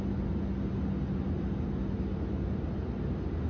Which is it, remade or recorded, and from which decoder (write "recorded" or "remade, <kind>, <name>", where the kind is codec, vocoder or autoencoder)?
recorded